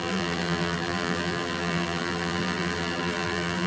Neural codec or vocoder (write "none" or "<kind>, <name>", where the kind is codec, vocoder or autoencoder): vocoder, BigVGAN v2